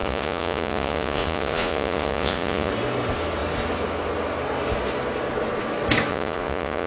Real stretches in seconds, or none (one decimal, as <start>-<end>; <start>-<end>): 2.7-6.1